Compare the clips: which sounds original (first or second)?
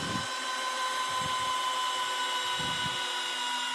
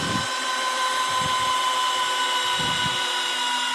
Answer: first